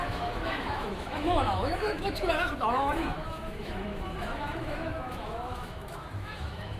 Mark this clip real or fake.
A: fake